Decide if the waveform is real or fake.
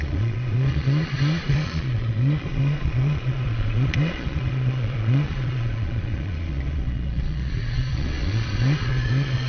fake